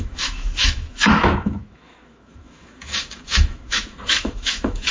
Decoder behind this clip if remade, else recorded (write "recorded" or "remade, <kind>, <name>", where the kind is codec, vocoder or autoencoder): remade, autoencoder, DAC-VAE